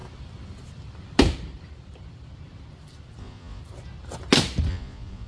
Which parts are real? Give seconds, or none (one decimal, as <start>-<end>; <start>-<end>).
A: 0.0-3.2; 3.6-4.7